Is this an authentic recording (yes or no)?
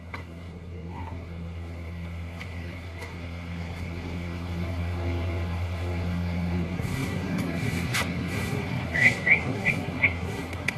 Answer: no